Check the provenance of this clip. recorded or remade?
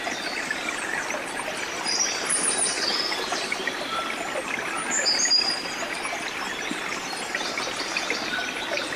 recorded